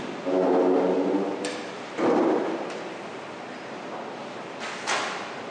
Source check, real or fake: real